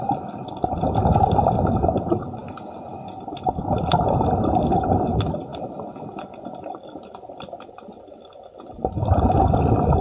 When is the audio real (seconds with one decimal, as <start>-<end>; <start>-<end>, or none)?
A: 0.0-10.0

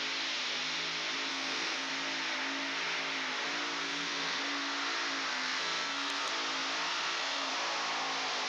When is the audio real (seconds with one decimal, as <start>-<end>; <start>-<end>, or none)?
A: 0.0-1.3; 1.9-3.8; 4.4-5.3; 6.3-6.9; 7.5-8.5

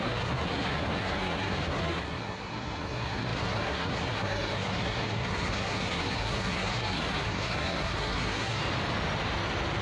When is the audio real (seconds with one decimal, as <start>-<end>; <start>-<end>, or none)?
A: 8.6-9.8

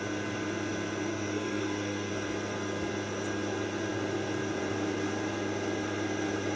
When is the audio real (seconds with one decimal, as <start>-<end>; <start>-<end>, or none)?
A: 0.0-1.1; 2.1-6.6

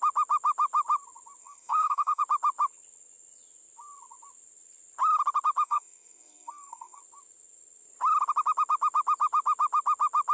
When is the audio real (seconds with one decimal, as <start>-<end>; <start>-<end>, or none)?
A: 0.0-1.4; 2.2-5.6; 7.0-10.3

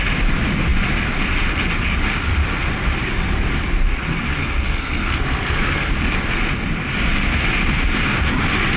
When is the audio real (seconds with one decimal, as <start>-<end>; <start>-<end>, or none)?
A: 0.0-4.3; 5.9-8.8